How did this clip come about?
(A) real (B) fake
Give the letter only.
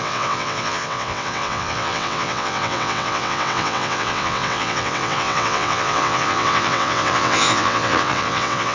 B